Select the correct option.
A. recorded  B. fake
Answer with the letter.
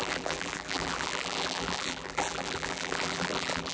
B